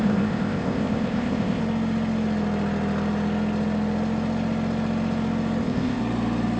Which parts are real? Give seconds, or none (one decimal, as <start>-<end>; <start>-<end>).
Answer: 1.6-5.6; 6.0-6.6